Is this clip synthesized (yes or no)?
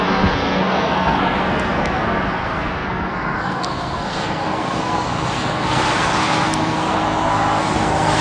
yes